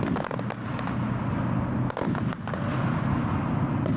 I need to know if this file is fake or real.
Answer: real